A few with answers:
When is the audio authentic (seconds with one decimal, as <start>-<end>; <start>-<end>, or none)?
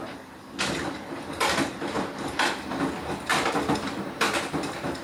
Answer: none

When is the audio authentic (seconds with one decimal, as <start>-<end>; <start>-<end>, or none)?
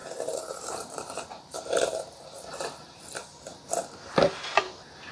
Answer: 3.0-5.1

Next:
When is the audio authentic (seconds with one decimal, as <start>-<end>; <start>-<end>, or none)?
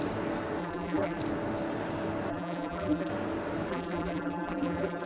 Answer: 0.0-0.6; 1.2-2.3; 3.1-3.7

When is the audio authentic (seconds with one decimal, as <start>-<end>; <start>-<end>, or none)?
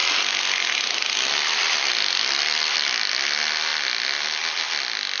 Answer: 3.1-5.2